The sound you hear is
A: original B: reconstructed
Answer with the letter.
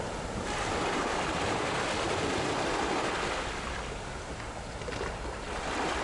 A